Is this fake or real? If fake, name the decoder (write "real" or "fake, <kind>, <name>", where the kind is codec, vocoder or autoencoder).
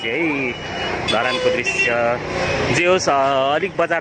real